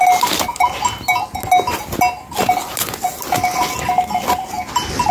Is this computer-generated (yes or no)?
no